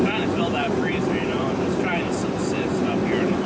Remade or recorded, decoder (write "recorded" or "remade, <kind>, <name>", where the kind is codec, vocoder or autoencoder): remade, vocoder, BigVGAN v2